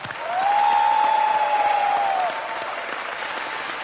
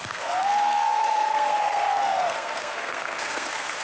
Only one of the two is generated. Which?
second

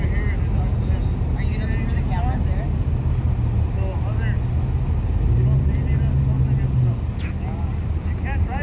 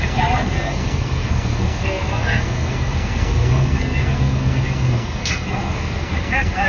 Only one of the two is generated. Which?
second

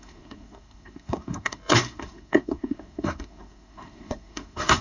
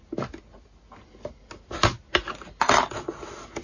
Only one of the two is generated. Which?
first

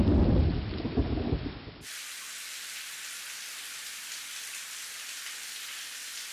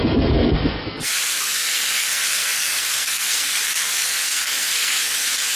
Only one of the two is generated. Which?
second